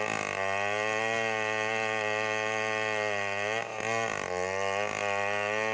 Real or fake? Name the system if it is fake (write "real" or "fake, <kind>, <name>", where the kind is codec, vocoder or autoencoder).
real